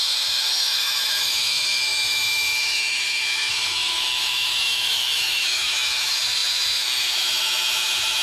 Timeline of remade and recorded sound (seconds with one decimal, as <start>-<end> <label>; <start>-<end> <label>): 0.0-8.2 remade